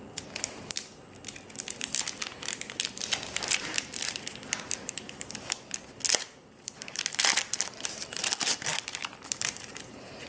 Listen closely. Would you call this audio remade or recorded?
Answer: remade